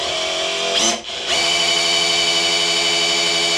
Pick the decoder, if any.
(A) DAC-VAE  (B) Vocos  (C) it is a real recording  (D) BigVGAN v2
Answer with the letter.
C